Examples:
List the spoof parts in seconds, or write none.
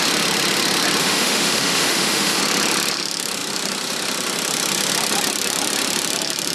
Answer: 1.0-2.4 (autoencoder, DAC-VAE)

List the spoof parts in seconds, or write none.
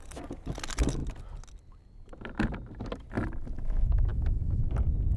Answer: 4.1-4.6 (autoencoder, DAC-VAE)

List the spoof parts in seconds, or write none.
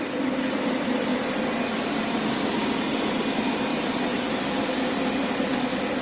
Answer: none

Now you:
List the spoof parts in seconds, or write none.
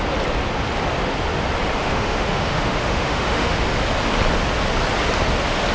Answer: 1.8-3.6 (autoencoder, DAC-VAE)